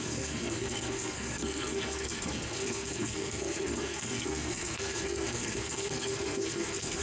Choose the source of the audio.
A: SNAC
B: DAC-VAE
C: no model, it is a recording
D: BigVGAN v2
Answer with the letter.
A